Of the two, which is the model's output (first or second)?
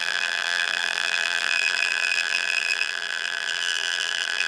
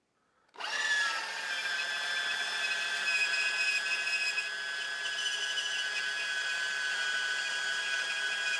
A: first